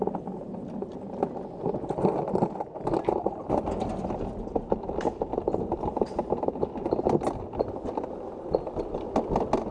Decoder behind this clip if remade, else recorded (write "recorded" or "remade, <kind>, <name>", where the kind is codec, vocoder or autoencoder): recorded